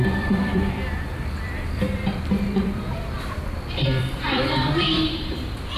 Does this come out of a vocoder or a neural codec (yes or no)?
yes